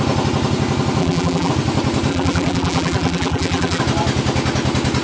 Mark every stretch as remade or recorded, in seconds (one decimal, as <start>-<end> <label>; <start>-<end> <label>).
0.0-1.0 recorded; 1.0-1.5 remade; 1.5-2.1 recorded; 2.1-3.8 remade; 3.8-5.0 recorded